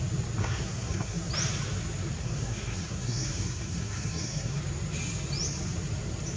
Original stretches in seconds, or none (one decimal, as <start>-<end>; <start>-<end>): 0.0-0.4; 1.3-2.2; 4.6-6.4